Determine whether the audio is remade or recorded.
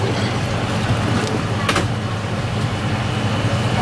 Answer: recorded